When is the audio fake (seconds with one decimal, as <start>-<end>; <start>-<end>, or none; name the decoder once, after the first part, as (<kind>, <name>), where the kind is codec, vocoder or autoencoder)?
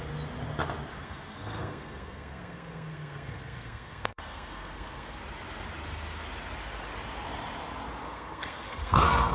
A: 0.9-5.2 (codec, SNAC); 8.0-9.3